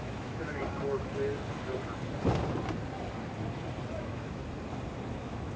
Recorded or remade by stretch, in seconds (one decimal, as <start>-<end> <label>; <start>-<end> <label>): 0.0-0.6 remade; 0.6-4.0 recorded; 4.0-4.4 remade; 4.4-5.1 recorded; 5.1-5.6 remade